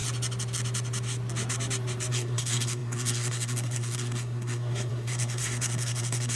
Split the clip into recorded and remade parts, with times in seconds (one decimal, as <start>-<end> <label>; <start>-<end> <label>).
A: 0.0-2.1 recorded; 2.1-6.4 remade